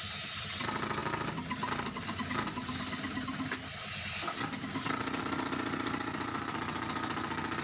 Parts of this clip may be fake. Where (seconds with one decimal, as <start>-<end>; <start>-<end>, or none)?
none